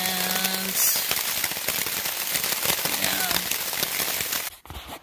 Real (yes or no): yes